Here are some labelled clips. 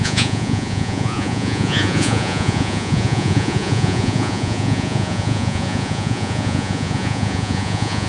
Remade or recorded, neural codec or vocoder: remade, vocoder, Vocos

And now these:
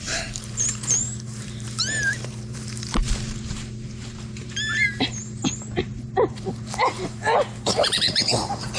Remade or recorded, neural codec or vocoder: remade, vocoder, BigVGAN v2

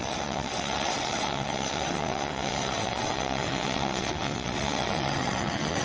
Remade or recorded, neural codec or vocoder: remade, vocoder, WaveNeXt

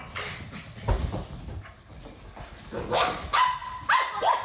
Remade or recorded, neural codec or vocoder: recorded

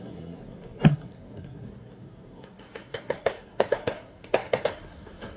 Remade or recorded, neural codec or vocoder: remade, codec, SNAC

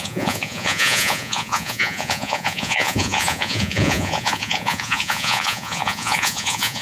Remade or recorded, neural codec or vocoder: remade, vocoder, Vocos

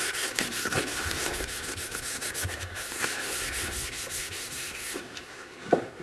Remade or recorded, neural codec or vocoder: remade, codec, SNAC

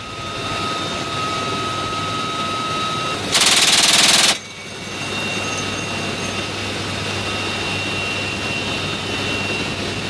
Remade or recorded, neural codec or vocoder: recorded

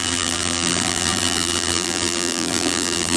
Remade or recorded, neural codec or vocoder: remade, vocoder, BigVGAN v2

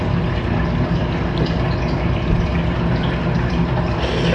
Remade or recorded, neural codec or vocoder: recorded